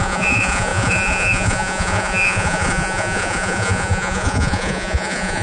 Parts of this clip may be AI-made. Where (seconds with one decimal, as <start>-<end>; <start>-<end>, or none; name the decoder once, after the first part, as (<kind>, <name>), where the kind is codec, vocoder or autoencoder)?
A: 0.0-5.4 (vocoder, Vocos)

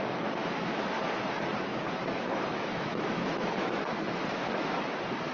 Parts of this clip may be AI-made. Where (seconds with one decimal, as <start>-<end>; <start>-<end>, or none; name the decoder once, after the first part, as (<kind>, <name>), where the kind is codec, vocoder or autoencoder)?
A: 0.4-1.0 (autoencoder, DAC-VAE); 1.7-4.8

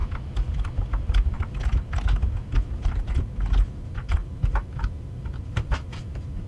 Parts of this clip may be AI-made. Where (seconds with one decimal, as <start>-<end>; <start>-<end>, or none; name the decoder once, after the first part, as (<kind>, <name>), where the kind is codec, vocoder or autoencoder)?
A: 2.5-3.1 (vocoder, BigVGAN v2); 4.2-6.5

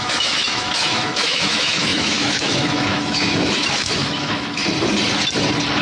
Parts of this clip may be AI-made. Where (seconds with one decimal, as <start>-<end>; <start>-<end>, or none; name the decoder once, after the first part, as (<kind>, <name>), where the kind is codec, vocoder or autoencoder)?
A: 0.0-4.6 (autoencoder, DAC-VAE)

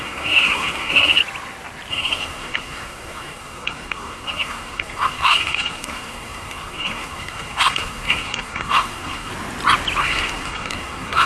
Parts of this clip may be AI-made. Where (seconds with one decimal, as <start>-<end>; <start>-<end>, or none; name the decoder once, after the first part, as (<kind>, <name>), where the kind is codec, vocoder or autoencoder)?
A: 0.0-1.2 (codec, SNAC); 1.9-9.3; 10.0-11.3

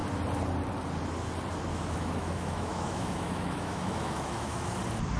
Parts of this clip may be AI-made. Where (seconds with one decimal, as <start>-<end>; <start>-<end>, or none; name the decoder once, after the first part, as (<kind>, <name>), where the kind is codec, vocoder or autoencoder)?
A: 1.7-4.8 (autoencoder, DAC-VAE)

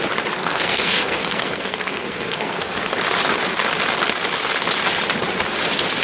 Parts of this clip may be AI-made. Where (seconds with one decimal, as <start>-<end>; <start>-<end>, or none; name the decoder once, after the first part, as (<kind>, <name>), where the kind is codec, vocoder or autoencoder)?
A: 0.4-2.9 (codec, SNAC)